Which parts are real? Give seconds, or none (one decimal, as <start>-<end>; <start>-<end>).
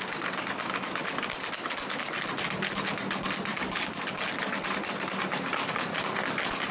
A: 0.0-3.5; 4.1-6.7